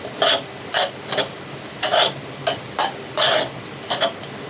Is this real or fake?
real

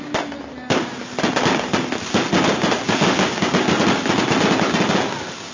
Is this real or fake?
real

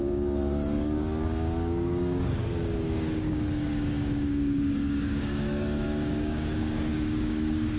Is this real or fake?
fake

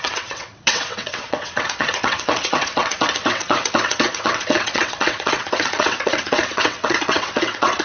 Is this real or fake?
fake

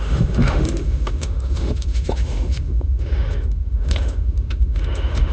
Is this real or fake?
fake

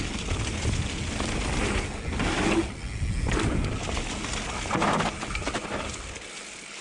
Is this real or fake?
real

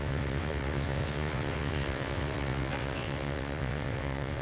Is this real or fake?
fake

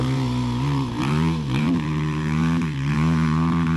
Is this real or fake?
fake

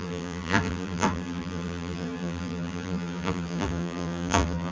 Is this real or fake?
fake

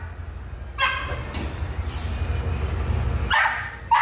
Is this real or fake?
real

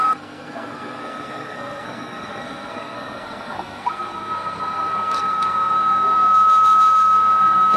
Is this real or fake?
fake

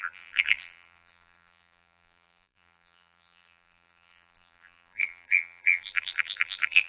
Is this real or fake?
fake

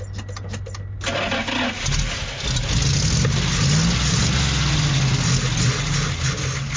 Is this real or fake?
real